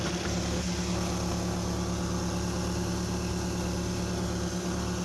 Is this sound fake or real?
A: real